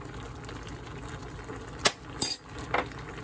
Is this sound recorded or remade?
recorded